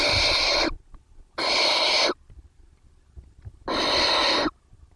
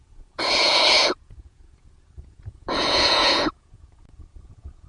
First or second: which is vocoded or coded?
second